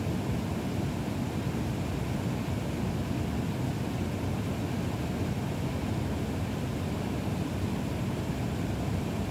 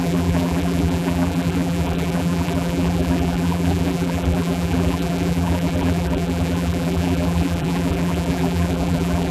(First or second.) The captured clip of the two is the first